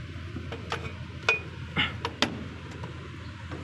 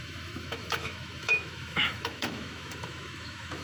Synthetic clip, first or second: second